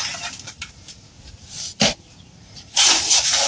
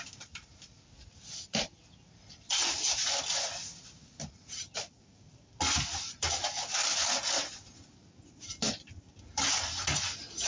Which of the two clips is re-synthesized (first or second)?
first